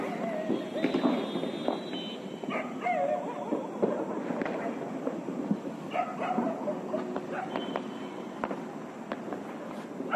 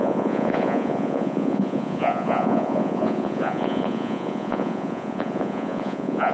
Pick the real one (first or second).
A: first